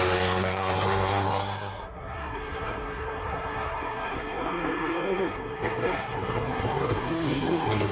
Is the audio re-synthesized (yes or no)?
yes